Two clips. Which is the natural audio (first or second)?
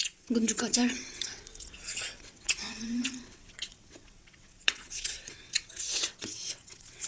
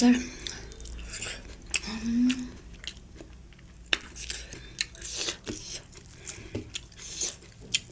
second